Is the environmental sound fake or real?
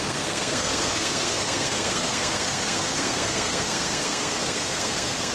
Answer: fake